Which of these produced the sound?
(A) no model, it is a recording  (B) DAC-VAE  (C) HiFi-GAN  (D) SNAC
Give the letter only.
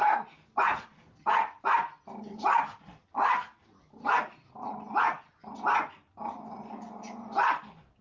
A